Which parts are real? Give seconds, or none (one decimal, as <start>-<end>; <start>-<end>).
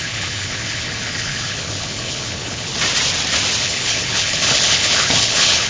2.7-3.6